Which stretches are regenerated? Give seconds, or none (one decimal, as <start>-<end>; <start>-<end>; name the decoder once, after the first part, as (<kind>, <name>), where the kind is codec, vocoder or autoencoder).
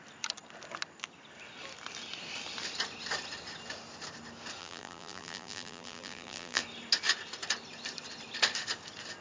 4.6-6.6 (vocoder, BigVGAN v2)